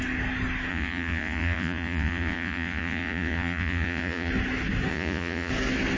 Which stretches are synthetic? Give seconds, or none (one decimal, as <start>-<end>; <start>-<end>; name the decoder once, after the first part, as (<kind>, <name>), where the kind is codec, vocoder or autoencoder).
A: 0.7-4.3 (vocoder, Vocos); 4.9-5.5